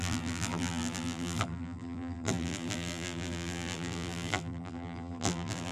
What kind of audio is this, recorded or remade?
remade